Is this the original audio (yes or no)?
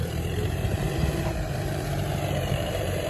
no